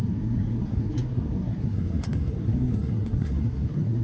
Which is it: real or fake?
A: fake